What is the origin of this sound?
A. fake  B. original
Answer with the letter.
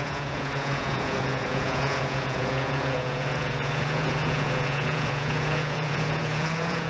A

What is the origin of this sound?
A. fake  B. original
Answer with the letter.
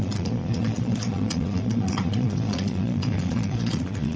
A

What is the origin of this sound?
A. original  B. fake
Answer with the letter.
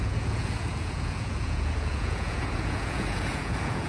B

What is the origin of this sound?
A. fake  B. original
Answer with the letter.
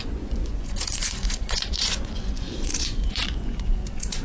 A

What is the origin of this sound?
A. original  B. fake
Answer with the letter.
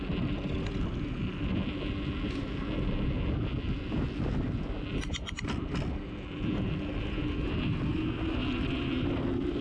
A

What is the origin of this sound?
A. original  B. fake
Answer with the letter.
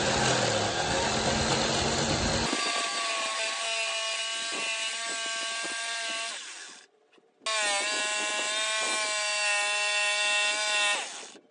A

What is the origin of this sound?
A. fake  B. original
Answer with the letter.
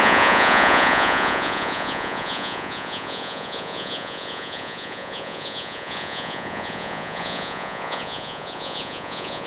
A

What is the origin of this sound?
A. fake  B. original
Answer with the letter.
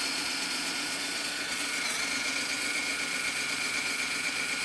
A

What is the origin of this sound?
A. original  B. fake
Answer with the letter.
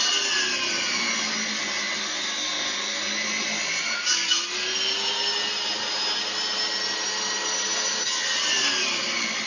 A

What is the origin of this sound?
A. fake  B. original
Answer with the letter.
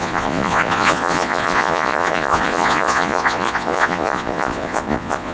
A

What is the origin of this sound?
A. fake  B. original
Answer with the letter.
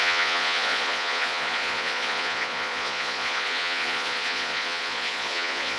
A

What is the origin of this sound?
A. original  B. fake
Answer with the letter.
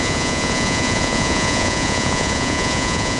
B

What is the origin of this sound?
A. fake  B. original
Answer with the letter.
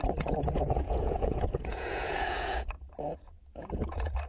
A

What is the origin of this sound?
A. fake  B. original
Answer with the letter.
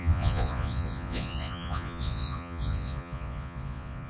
A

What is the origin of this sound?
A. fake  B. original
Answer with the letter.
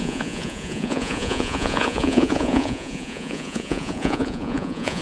A